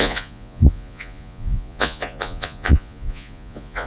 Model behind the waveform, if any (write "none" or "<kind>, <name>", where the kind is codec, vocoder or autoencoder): vocoder, Vocos